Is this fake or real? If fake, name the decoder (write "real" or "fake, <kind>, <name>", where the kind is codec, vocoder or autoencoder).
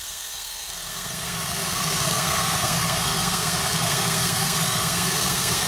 fake, codec, SNAC